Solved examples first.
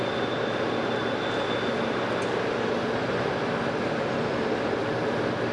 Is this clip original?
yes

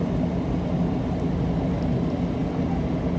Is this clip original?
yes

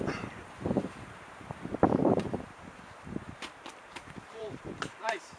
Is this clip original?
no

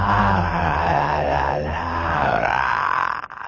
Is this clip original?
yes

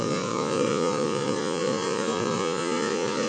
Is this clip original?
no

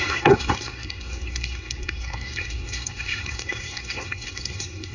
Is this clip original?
no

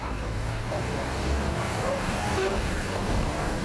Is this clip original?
no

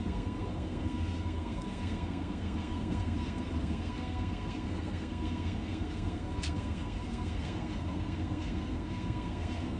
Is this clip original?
no